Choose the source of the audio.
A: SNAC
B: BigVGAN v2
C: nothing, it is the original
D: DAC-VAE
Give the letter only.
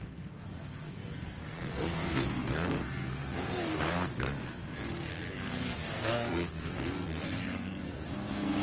A